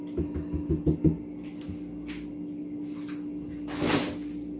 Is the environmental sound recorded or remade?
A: recorded